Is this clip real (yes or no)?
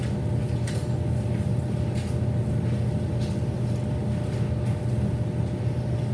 yes